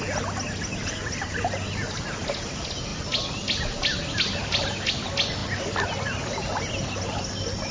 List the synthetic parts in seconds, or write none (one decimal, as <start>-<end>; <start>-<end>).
none